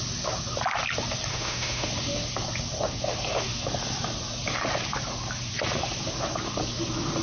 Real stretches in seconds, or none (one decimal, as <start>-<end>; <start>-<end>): 0.0-1.3; 1.9-7.2